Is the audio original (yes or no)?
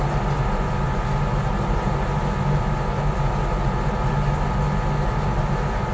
yes